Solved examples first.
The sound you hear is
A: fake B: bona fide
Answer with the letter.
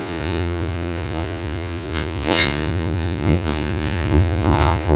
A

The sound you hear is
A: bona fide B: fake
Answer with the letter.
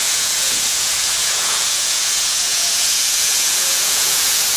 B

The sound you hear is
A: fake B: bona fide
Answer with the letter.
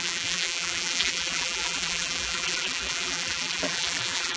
A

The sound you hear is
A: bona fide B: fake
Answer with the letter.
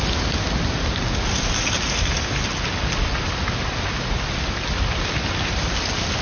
A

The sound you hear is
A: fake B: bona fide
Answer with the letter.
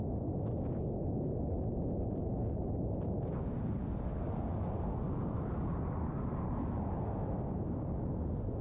B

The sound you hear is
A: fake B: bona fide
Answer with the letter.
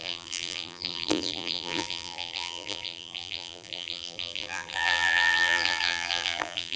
A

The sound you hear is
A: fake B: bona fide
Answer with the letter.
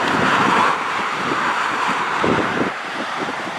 A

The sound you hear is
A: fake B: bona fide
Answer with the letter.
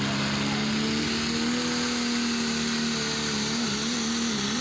B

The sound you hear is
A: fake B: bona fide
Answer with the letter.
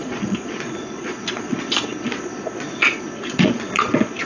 A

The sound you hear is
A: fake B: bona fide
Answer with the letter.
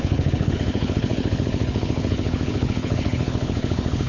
A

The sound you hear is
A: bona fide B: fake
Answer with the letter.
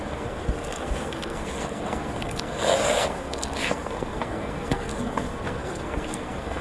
B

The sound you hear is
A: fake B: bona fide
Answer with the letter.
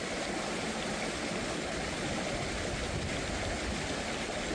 B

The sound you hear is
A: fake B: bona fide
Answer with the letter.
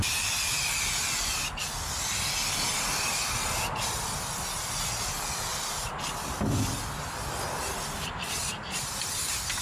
B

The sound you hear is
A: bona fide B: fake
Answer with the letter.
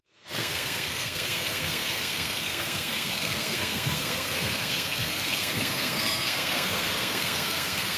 B